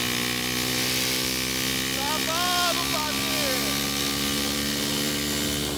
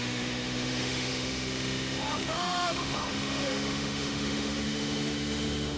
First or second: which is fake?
second